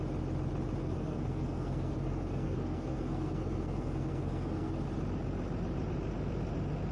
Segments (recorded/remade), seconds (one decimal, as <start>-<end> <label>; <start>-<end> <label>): 0.0-0.8 recorded; 0.8-4.7 remade; 4.7-6.9 recorded